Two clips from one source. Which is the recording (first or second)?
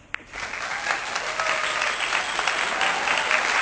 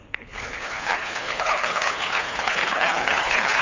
first